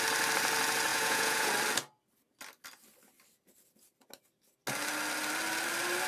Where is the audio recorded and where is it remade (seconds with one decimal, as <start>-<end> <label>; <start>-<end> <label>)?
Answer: 0.0-0.9 recorded; 0.9-1.5 remade; 1.5-6.1 recorded